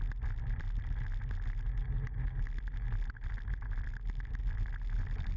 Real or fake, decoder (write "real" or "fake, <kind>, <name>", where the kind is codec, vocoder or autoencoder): real